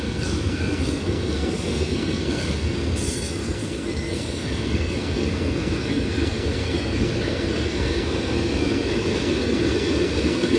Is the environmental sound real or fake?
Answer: fake